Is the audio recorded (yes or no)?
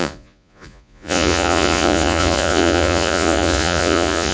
no